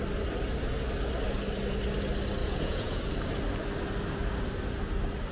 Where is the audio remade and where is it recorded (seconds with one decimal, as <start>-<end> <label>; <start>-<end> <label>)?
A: 0.0-2.4 recorded; 2.4-3.0 remade; 3.0-5.3 recorded